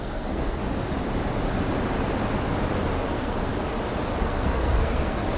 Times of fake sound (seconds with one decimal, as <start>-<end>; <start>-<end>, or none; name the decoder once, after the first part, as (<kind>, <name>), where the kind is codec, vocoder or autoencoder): 0.0-0.6 (codec, SNAC); 3.1-3.5; 4.2-5.4